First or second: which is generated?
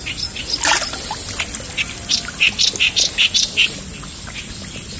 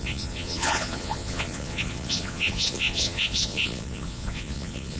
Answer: second